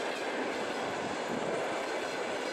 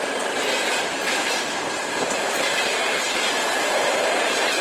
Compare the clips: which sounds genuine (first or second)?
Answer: first